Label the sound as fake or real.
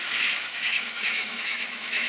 fake